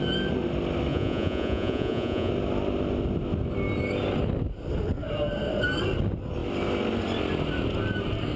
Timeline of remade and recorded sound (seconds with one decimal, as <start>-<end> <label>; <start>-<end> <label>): 0.0-0.9 recorded; 0.9-2.3 remade; 2.3-8.4 recorded